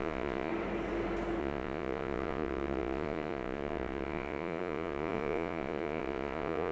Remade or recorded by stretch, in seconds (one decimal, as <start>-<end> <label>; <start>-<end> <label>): 0.0-0.5 remade; 0.5-1.4 recorded; 1.4-6.7 remade